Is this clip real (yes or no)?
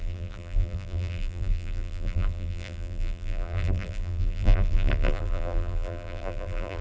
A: no